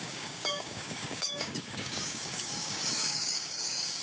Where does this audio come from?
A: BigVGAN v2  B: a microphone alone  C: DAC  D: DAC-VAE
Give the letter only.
C